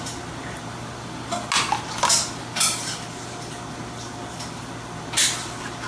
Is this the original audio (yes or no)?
yes